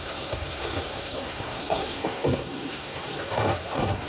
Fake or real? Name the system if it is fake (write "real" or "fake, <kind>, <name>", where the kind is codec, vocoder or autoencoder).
fake, codec, SNAC